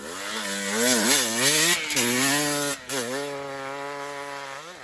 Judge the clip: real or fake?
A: real